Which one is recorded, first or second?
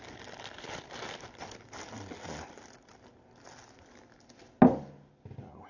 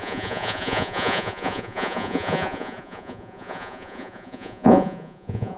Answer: first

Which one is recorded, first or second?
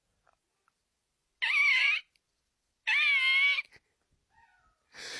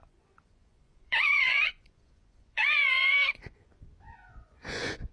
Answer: first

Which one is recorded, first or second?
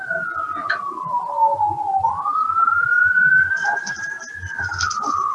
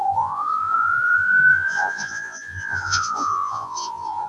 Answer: first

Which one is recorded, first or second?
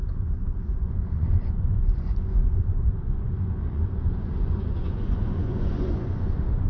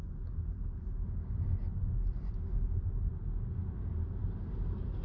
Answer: second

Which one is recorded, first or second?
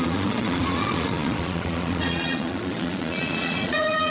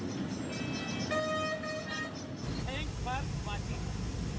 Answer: second